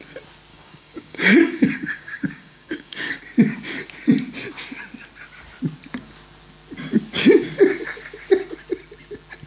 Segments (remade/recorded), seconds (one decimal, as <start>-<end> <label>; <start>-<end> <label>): 0.0-0.5 recorded; 0.5-3.2 remade; 3.2-9.5 recorded